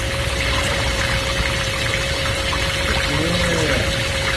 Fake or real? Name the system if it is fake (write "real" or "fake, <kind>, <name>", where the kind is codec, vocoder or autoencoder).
real